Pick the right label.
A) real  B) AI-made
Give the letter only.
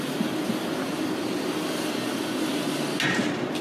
A